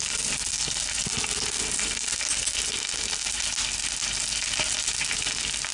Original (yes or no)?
yes